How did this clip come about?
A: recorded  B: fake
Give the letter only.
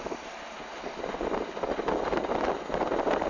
A